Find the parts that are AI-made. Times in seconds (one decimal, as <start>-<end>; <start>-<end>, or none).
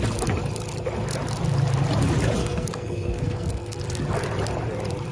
2.4-3.8